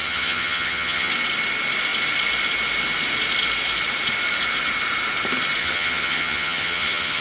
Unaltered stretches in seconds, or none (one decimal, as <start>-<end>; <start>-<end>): 1.1-5.6